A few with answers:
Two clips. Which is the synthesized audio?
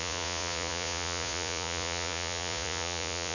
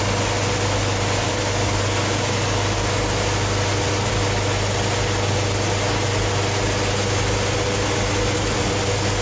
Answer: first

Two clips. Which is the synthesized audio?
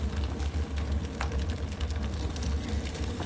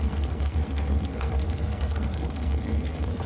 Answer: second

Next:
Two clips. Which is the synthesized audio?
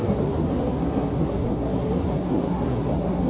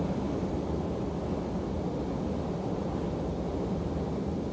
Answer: first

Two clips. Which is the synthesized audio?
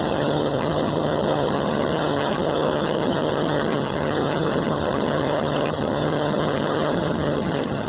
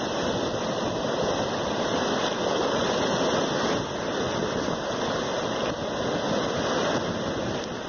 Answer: first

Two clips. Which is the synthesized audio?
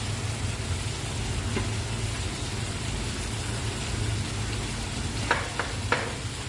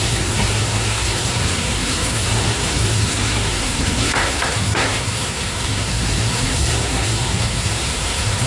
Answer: second